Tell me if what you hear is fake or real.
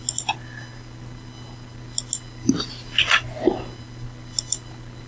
real